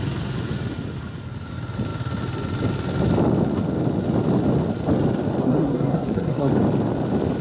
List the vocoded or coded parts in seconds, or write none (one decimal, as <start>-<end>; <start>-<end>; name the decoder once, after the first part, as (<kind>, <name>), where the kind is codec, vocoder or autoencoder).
5.4-6.5 (codec, SNAC)

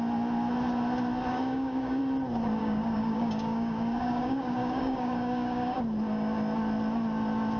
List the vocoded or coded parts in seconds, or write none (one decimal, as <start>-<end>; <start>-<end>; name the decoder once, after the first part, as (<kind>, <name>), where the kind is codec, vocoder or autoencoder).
1.3-2.0 (codec, DAC); 2.6-5.8

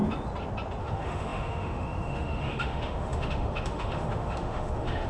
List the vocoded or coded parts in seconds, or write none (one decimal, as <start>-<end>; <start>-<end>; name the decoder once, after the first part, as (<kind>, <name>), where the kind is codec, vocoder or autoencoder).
0.8-5.1 (autoencoder, DAC-VAE)

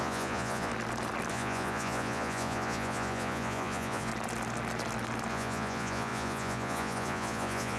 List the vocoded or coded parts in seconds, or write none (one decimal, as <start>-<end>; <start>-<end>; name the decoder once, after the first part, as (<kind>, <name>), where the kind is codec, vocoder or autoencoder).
0.0-0.7 (vocoder, Vocos); 1.3-4.1; 5.3-7.8